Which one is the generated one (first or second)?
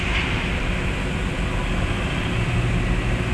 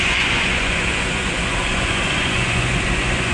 second